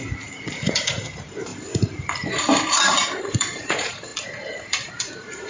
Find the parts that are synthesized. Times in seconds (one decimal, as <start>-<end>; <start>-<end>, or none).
0.0-5.5